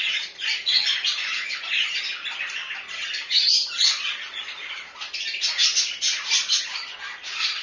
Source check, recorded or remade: recorded